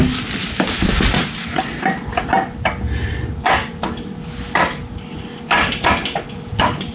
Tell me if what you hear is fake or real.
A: real